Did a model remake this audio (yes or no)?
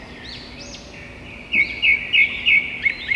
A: no